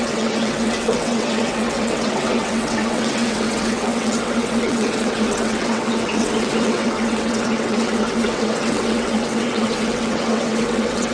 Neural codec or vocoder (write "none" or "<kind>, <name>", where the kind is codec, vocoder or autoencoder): vocoder, WaveNeXt